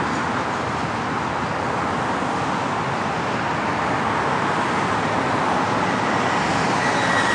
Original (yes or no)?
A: yes